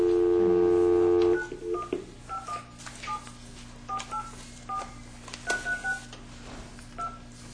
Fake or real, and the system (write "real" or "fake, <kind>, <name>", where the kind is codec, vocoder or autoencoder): real